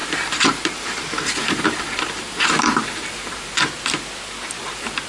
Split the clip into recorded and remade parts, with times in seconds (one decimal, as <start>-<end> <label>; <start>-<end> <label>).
0.0-3.6 remade; 3.6-4.6 recorded; 4.6-5.1 remade